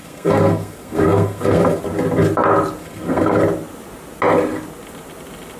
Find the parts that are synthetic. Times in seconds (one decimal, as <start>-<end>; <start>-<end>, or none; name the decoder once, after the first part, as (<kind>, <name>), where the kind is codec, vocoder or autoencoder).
0.0-1.8 (codec, SNAC); 2.8-3.4